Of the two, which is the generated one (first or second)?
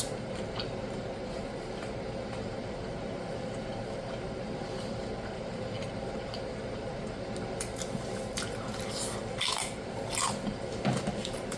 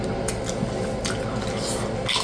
first